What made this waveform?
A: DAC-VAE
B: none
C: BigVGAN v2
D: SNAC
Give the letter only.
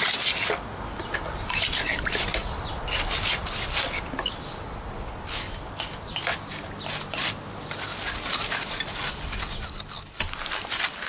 B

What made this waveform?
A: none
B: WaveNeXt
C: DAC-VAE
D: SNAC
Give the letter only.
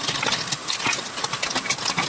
A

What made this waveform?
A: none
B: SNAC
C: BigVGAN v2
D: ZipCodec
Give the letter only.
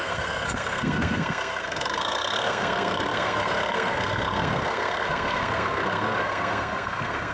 B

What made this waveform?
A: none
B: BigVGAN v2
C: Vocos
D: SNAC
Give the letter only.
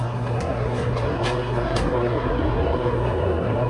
D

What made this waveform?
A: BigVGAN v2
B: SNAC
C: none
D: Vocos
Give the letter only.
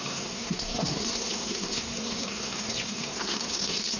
B